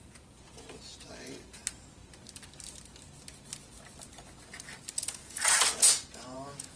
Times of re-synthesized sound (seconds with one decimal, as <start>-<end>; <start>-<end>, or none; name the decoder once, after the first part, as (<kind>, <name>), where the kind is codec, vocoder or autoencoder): 0.0-1.6 (vocoder, Vocos); 4.9-6.8